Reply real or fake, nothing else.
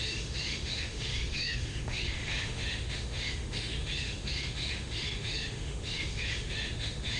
fake